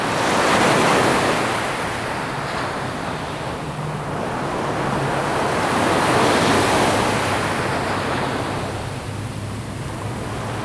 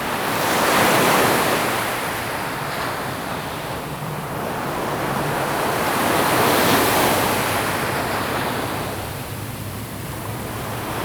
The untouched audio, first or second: first